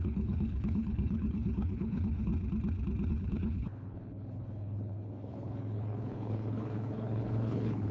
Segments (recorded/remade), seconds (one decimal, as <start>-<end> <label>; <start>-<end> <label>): 0.0-2.3 remade; 2.3-3.1 recorded; 3.1-7.9 remade